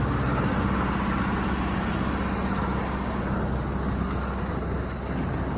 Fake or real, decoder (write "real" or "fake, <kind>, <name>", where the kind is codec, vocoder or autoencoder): real